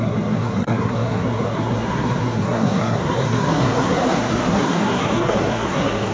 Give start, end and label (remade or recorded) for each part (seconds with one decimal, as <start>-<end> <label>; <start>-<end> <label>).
0.0-6.1 remade